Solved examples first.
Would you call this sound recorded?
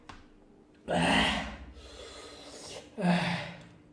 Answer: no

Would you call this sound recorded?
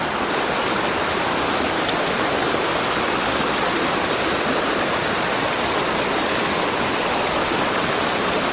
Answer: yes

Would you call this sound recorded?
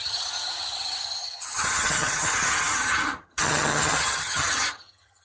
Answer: no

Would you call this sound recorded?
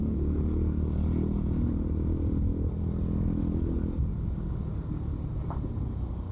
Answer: yes